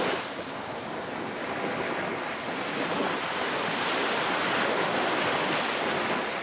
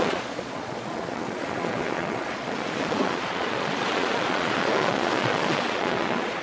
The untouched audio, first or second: first